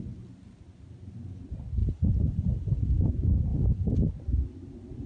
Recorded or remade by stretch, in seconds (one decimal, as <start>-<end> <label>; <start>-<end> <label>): 0.0-1.8 recorded; 1.8-3.1 remade; 3.1-3.5 recorded; 3.5-4.1 remade; 4.1-5.1 recorded